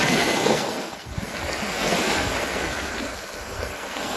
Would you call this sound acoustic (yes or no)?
no